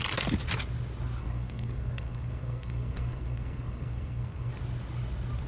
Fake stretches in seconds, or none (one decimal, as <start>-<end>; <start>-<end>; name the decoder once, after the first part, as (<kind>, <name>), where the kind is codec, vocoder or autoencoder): 1.2-4.5 (codec, SNAC)